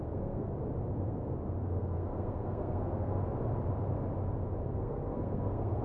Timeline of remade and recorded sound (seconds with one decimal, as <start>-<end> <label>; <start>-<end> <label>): 0.0-0.5 remade; 0.5-1.0 recorded; 1.0-3.1 remade; 3.1-4.6 recorded; 4.6-5.8 remade